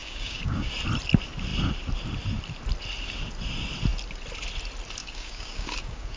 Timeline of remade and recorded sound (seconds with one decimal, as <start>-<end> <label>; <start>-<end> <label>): 0.0-0.7 remade; 0.7-5.0 recorded; 5.0-6.2 remade